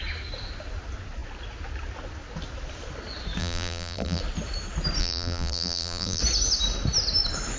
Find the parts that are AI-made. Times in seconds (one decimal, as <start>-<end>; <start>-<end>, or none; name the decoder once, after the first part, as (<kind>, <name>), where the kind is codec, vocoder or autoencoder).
3.4-4.2 (vocoder, BigVGAN v2); 5.0-6.2